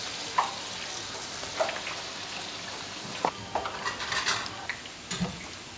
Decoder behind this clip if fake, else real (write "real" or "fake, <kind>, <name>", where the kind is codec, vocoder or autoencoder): real